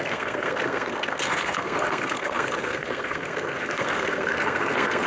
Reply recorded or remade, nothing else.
remade